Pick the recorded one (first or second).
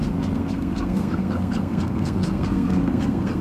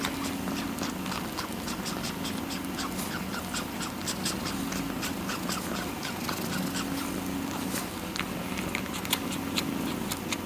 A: second